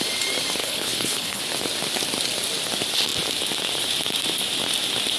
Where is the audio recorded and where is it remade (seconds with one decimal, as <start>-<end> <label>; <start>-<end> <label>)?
0.0-0.6 recorded; 0.6-1.4 remade; 1.4-5.2 recorded